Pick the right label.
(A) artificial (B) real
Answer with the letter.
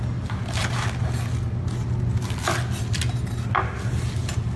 B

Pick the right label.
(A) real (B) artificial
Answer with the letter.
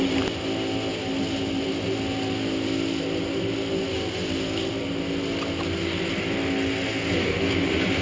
A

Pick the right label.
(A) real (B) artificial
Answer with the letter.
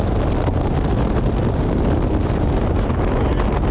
A